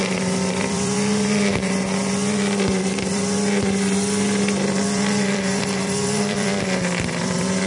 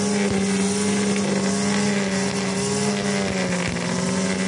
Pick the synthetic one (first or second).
first